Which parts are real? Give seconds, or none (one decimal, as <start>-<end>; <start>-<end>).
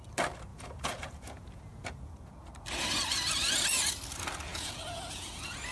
0.0-0.5; 2.5-4.5